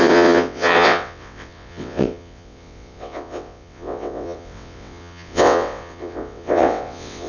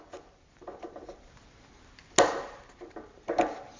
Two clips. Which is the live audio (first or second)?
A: second